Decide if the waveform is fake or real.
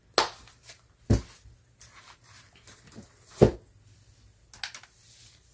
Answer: real